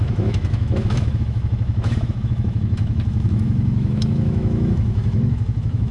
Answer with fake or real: fake